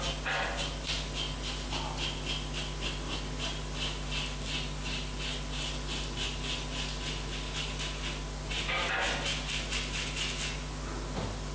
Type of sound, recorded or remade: recorded